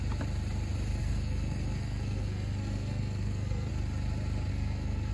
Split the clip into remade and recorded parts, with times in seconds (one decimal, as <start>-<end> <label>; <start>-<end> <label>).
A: 0.0-1.0 recorded; 1.0-3.7 remade; 3.7-4.5 recorded; 4.5-5.1 remade

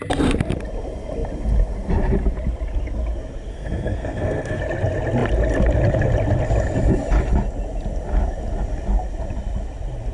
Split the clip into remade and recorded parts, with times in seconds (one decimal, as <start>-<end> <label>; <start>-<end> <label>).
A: 0.0-3.5 recorded; 3.5-4.6 remade; 4.6-10.1 recorded